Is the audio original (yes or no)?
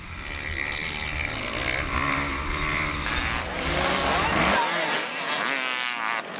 yes